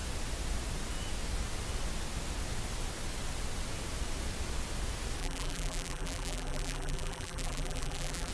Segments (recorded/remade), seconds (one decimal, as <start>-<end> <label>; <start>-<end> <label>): 0.0-5.2 recorded; 5.2-8.3 remade